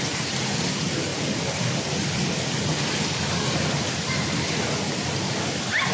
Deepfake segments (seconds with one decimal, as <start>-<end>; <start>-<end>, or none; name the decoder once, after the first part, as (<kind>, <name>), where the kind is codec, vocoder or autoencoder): none